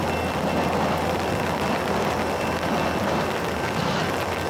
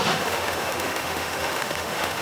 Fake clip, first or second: second